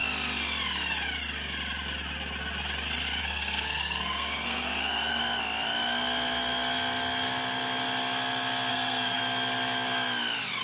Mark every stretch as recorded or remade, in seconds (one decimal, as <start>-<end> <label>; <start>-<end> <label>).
0.0-3.2 recorded; 3.2-5.2 remade; 5.2-8.7 recorded; 8.7-9.2 remade; 9.2-10.6 recorded